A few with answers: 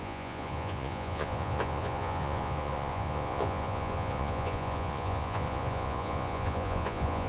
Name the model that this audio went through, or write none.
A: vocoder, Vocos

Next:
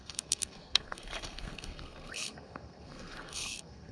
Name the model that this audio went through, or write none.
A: codec, SNAC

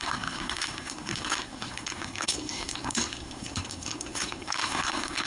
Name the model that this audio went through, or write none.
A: codec, SNAC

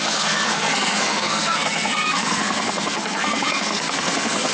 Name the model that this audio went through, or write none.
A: codec, SNAC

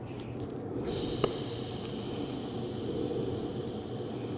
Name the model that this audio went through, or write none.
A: none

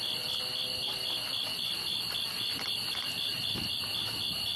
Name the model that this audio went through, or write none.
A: none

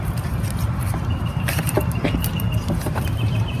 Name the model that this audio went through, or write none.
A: vocoder, BigVGAN v2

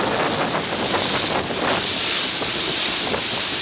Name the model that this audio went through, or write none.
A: none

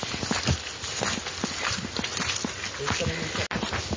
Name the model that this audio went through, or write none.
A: none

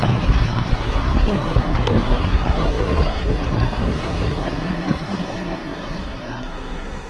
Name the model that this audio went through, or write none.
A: codec, SNAC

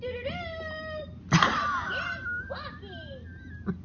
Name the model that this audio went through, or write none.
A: none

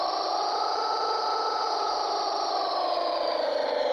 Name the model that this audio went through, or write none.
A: none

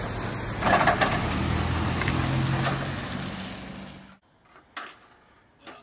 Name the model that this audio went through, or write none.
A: none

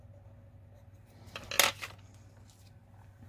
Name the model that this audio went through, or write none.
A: none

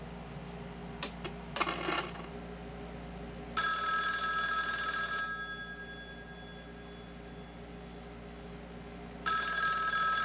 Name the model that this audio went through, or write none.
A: none